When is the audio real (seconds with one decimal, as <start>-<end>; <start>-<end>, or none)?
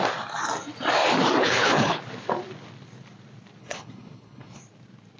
0.0-1.4; 2.0-3.6; 4.6-5.2